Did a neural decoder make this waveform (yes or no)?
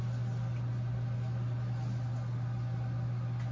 no